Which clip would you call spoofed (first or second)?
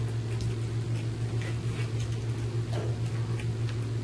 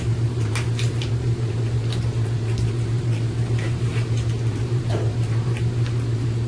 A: second